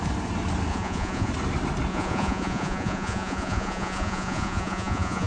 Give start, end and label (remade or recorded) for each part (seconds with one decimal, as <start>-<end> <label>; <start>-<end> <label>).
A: 0.0-0.7 recorded; 0.7-1.3 remade; 1.3-1.9 recorded; 1.9-5.3 remade